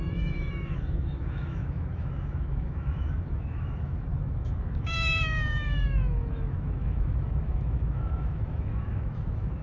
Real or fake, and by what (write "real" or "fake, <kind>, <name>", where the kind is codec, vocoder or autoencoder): fake, autoencoder, DAC-VAE